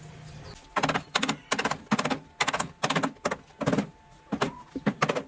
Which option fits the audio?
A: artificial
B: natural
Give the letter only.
B